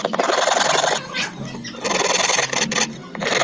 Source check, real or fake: real